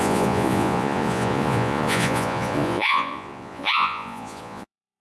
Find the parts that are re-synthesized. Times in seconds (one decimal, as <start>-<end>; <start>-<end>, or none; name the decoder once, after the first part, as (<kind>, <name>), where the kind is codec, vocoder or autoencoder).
0.0-5.0 (vocoder, Vocos)